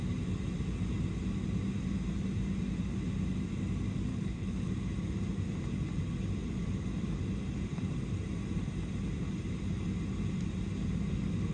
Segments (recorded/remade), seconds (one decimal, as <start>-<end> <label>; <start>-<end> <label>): 0.0-4.1 recorded; 4.1-4.7 remade; 4.7-11.5 recorded